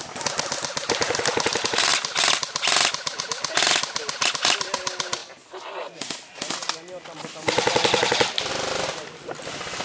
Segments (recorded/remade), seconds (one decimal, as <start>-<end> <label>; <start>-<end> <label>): 0.0-9.8 recorded